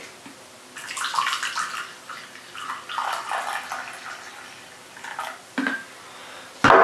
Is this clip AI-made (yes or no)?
no